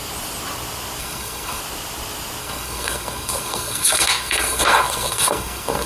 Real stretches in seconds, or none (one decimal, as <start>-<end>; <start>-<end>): 0.0-1.0; 1.6-2.4